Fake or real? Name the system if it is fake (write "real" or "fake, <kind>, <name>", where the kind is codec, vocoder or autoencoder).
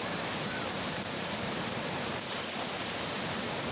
fake, vocoder, BigVGAN v2